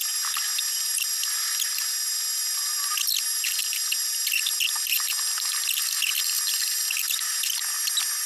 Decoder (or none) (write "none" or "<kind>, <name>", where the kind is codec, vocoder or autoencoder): vocoder, BigVGAN v2